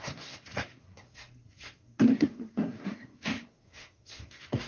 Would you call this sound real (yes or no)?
no